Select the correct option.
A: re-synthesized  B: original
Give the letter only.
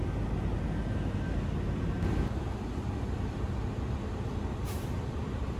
B